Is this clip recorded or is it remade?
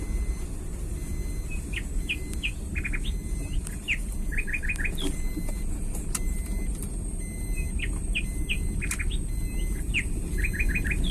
recorded